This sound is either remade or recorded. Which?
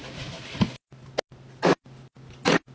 recorded